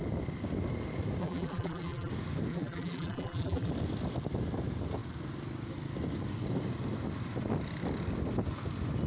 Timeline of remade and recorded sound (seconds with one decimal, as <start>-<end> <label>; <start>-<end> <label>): 0.0-1.2 recorded; 1.2-2.1 remade; 2.1-2.5 recorded; 2.5-3.7 remade; 3.7-9.1 recorded